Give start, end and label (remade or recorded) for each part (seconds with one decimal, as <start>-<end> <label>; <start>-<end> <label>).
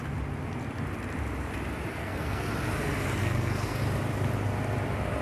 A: 0.0-2.0 recorded; 2.0-2.5 remade; 2.5-3.2 recorded; 3.2-3.8 remade; 3.8-5.2 recorded